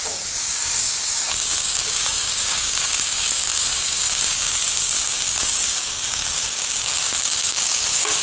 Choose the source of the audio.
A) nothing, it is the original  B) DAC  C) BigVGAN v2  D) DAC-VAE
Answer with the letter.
B